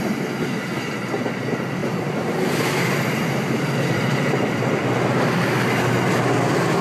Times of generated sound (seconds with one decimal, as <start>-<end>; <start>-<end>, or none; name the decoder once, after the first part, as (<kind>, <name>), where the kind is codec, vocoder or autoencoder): 1.8-4.8 (vocoder, BigVGAN v2)